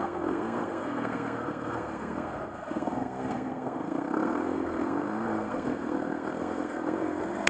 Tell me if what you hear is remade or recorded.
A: remade